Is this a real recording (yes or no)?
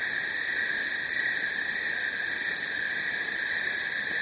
yes